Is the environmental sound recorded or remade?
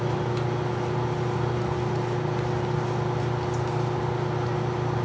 recorded